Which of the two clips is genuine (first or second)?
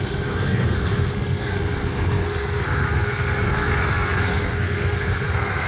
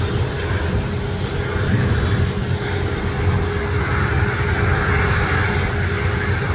second